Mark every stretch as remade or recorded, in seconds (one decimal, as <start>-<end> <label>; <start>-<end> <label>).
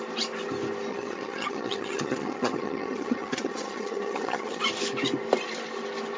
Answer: 0.0-0.9 recorded; 0.9-4.6 remade; 4.6-6.2 recorded